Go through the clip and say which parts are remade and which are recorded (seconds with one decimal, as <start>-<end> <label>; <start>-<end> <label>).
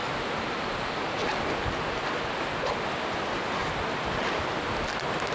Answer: 0.0-5.3 recorded